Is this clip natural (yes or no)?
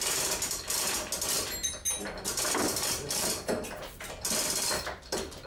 yes